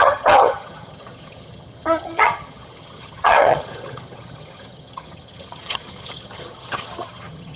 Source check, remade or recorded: remade